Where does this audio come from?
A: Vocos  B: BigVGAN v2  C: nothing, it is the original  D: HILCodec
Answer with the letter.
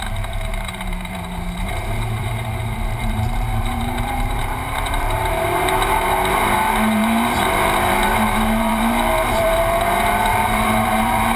B